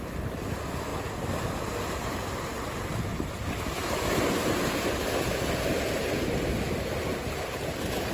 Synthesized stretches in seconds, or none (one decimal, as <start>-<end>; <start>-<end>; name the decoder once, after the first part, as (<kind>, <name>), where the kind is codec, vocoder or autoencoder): 3.1-5.5 (vocoder, BigVGAN v2); 7.1-8.1